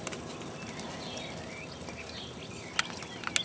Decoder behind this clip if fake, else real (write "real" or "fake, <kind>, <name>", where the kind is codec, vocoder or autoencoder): real